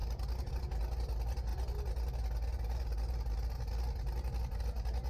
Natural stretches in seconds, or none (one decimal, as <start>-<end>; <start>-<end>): 0.0-5.1